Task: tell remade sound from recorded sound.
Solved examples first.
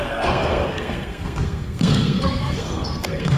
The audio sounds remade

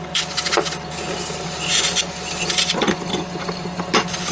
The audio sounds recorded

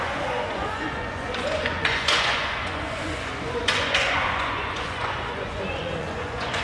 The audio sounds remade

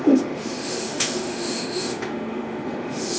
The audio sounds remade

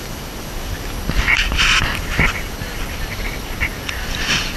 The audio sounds recorded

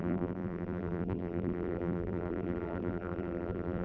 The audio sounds remade